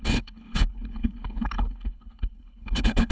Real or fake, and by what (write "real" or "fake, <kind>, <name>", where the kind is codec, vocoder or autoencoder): fake, codec, HILCodec